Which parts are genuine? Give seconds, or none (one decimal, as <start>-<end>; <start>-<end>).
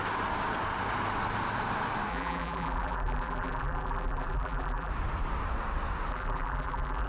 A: 0.0-2.1; 4.9-6.1